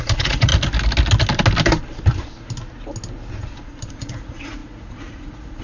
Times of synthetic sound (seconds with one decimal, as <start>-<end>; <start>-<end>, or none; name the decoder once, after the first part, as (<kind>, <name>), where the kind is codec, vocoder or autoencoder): 0.0-0.5 (vocoder, Vocos); 3.9-5.6